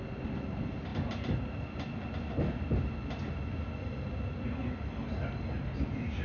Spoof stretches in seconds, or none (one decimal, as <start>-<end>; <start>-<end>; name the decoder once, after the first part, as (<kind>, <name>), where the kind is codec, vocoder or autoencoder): none